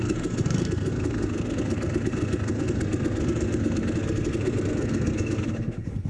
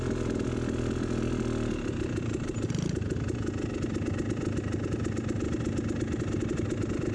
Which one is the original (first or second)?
second